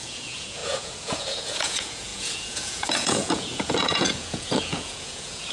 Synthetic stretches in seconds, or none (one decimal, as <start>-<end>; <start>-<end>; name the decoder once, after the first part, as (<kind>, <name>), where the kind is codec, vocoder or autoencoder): 0.0-5.5 (vocoder, Vocos)